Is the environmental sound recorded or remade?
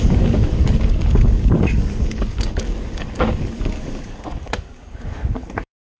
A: remade